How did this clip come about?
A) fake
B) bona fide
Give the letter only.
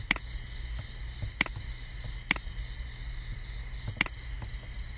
B